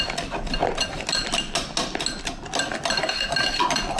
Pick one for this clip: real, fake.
real